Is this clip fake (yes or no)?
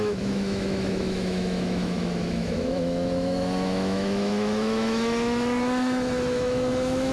yes